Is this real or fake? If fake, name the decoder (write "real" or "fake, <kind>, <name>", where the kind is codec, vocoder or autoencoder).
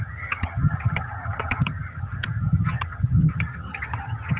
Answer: fake, vocoder, HiFi-GAN